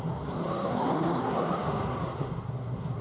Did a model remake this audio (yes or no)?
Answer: yes